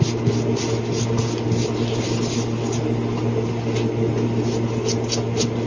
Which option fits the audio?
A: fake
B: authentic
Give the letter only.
B